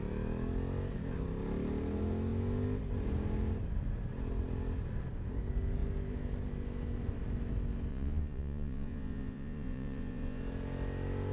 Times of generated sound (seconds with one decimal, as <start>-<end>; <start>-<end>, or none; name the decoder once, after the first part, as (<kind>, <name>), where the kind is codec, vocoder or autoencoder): 7.9-10.4 (vocoder, Vocos)